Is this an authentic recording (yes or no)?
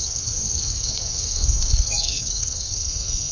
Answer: no